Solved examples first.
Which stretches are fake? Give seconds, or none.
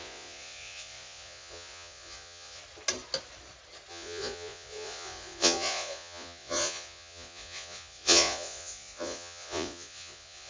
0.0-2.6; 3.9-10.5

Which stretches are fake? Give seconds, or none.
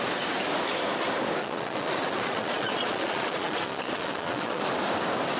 1.4-4.6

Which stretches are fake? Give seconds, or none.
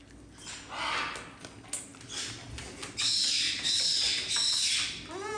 none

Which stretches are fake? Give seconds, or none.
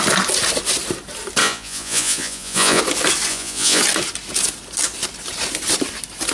1.4-2.8; 3.3-3.8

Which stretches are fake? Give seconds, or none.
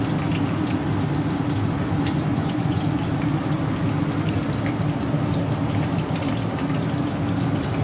2.3-2.8